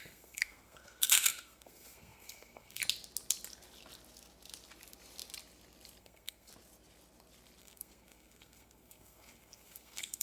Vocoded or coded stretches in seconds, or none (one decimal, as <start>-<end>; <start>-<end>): 0.0-2.8; 6.0-6.5; 7.6-10.2